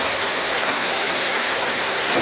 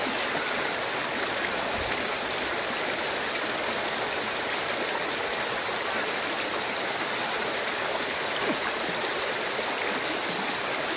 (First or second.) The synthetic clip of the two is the first